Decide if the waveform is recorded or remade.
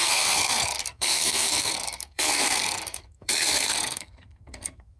remade